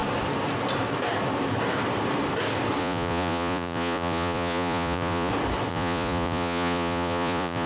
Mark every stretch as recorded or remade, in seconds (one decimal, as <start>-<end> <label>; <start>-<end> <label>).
0.0-2.8 recorded; 2.8-5.3 remade; 5.3-5.7 recorded; 5.7-7.7 remade